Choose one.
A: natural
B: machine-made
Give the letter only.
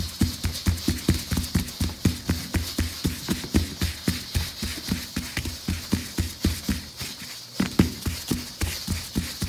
A